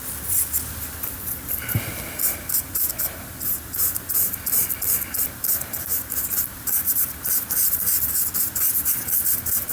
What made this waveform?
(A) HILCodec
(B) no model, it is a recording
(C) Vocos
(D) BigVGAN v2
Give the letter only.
B